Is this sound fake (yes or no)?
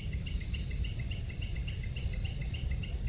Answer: no